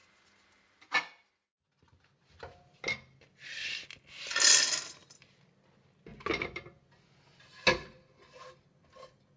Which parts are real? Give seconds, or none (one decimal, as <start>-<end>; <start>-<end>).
0.0-9.4